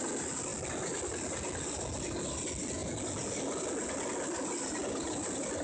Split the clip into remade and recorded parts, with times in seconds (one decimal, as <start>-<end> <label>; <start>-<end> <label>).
0.0-5.6 recorded